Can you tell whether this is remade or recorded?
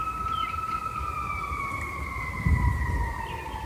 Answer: recorded